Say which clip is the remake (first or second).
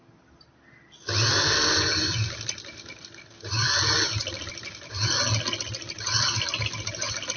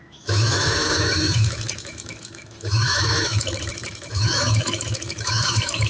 second